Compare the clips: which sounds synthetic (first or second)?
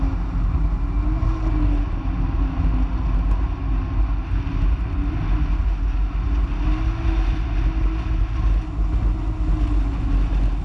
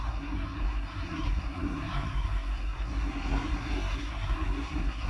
second